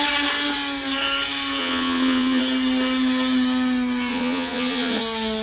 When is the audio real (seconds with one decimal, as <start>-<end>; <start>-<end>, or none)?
0.0-1.6; 2.4-4.1; 5.0-5.4